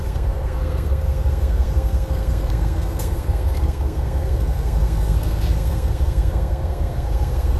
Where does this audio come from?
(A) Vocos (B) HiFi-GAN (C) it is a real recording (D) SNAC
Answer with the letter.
D